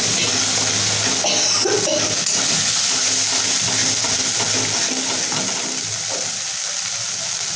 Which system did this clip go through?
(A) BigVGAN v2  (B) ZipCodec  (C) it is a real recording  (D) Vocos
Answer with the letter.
C